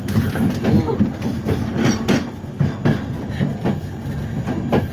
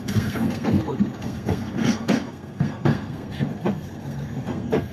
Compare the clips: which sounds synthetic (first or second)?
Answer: second